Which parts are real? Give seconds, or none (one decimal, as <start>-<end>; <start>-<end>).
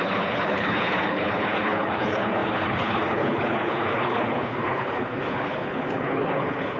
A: none